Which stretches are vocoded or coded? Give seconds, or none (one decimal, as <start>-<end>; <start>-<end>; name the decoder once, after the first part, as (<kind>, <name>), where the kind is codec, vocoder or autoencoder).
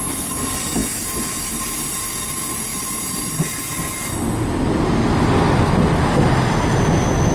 none